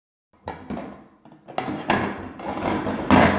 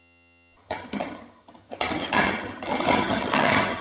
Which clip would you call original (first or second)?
first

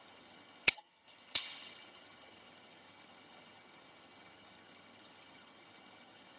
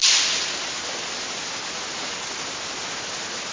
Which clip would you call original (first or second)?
second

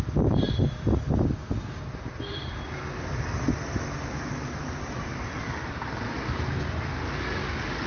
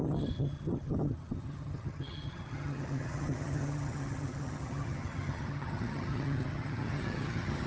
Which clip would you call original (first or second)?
first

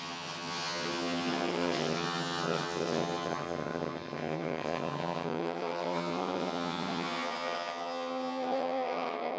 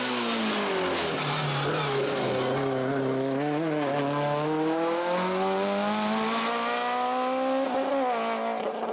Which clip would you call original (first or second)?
second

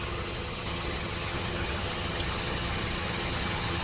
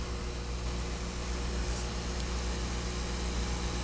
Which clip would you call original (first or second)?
second